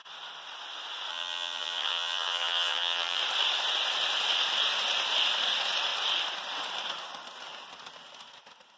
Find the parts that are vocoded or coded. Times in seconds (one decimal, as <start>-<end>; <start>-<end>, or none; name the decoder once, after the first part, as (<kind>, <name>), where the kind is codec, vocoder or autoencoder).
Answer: 1.1-3.2 (vocoder, HiFi-GAN)